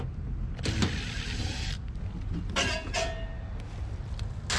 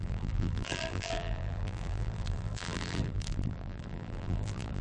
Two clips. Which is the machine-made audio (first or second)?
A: second